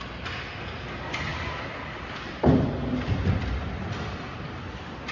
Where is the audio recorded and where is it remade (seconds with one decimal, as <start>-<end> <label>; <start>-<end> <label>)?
0.0-1.3 recorded; 1.3-4.4 remade; 4.4-5.1 recorded